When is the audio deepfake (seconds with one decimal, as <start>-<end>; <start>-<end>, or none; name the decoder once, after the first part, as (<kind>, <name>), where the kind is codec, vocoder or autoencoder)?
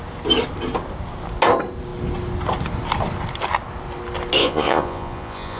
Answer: 4.4-5.6 (vocoder, Vocos)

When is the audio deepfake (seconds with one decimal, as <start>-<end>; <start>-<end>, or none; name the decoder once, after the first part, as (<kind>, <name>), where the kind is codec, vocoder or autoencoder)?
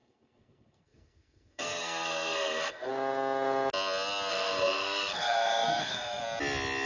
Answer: 0.0-2.9 (codec, SNAC); 4.3-6.2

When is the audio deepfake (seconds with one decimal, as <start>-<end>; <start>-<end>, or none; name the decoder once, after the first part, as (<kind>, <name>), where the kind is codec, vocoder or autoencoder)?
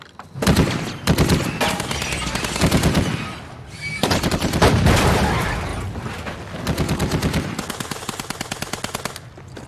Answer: none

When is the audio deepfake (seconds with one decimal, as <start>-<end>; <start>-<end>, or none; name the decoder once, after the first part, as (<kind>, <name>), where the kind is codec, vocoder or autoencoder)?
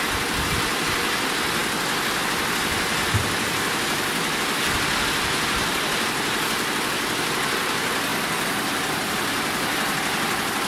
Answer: none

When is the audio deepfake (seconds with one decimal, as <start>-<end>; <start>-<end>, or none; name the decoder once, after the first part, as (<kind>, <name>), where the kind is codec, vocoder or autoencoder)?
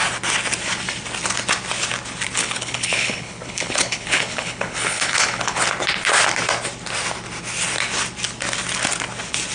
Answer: 2.4-5.6 (codec, HILCodec)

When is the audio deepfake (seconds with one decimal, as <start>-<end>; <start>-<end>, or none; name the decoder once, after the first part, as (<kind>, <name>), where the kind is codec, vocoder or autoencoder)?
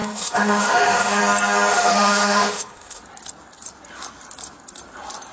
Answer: 0.0-1.2 (autoencoder, DAC-VAE); 1.7-3.0